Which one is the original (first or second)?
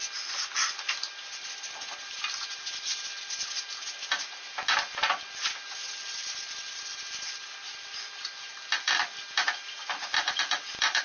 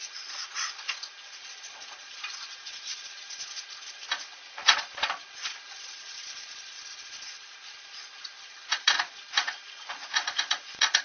first